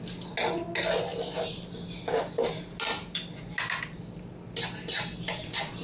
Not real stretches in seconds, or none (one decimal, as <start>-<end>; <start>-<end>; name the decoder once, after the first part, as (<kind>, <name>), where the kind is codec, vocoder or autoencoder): 1.1-2.2 (vocoder, BigVGAN v2)